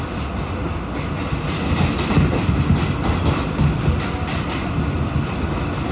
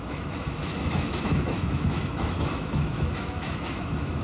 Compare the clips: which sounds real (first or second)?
first